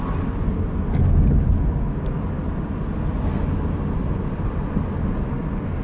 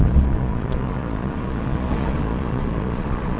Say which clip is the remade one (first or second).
second